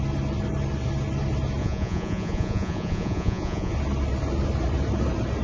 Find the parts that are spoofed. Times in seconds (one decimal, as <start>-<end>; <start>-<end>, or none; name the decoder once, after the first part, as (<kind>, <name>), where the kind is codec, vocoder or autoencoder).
1.6-3.7 (vocoder, Vocos)